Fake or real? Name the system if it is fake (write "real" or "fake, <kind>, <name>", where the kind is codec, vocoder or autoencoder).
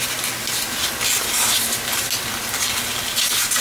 real